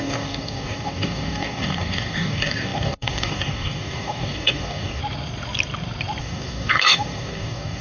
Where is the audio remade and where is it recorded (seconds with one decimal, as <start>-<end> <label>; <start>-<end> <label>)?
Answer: 0.0-5.0 remade; 5.0-6.2 recorded; 6.2-7.8 remade